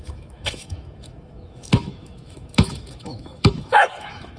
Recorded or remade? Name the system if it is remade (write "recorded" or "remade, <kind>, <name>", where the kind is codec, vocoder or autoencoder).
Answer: remade, autoencoder, DAC-VAE